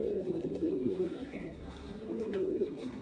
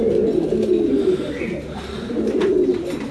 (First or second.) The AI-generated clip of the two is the first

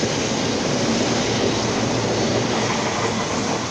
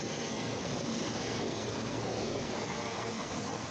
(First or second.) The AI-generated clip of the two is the second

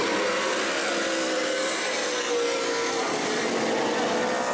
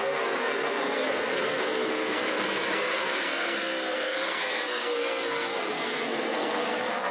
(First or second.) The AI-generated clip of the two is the second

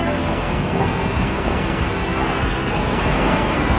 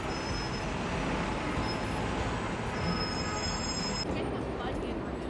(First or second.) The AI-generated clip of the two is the first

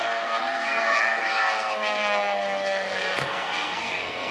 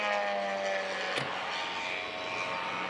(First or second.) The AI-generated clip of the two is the first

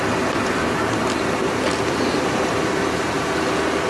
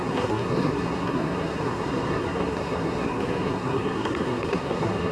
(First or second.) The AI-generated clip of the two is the second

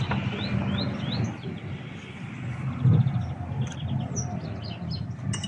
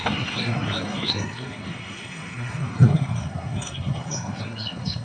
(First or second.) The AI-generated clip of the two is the second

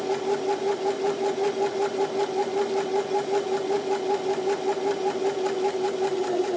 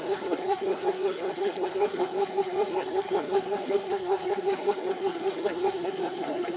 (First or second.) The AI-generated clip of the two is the second